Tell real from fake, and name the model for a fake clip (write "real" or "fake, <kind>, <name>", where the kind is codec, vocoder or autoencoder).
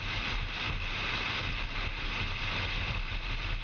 real